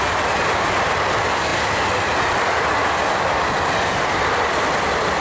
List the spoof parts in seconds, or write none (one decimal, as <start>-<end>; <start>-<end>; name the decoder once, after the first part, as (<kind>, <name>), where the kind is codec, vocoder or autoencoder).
none